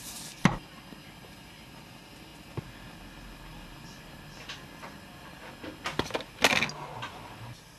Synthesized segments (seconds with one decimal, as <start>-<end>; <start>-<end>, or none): none